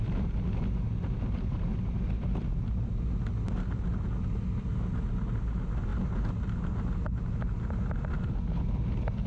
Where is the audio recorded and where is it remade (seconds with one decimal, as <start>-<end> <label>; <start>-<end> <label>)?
0.0-9.3 recorded